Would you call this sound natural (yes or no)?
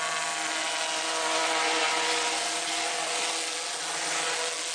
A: yes